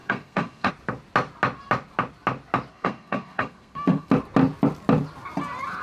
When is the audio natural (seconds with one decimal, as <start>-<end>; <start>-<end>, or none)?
0.7-2.7; 4.1-5.8